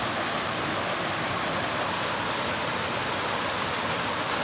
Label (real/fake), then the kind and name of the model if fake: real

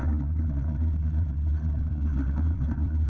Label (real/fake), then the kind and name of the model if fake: fake, vocoder, WaveNeXt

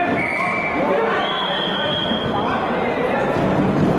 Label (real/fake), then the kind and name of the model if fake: fake, vocoder, BigVGAN v2